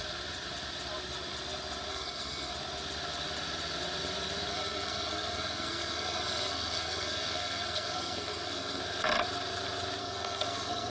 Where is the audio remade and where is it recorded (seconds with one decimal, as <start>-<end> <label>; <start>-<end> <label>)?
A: 0.0-1.9 recorded; 1.9-2.5 remade; 2.5-4.5 recorded; 4.5-8.8 remade; 8.8-10.0 recorded; 10.0-10.9 remade